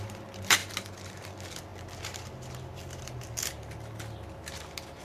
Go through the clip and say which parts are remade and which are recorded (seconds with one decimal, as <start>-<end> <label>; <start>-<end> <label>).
0.0-5.0 recorded